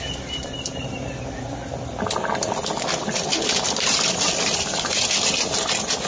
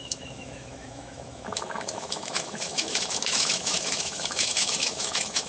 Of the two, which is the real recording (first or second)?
first